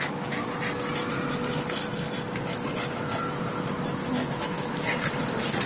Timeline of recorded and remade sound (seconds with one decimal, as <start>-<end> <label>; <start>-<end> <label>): 0.0-4.0 recorded; 4.0-4.8 remade; 4.8-5.7 recorded